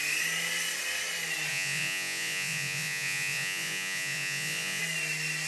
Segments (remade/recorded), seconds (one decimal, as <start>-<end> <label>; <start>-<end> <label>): 0.0-1.5 recorded; 1.5-4.8 remade; 4.8-5.5 recorded